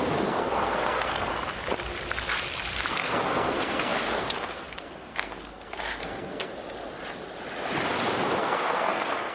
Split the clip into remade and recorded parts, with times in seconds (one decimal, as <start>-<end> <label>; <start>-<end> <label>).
0.0-1.3 remade; 1.3-2.9 recorded; 2.9-6.5 remade; 6.5-8.4 recorded; 8.4-9.3 remade